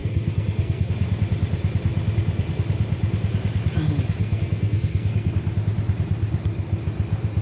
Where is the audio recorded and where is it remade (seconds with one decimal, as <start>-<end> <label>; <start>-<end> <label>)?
0.0-0.9 remade; 0.9-4.2 recorded; 4.2-5.3 remade; 5.3-7.4 recorded